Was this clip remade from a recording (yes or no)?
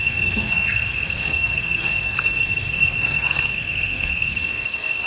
yes